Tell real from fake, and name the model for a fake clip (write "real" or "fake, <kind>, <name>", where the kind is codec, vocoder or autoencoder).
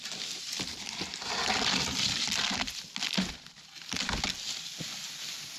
real